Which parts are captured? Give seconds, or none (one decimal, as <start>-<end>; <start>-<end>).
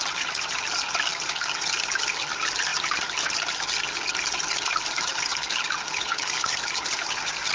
1.1-1.7; 5.3-6.4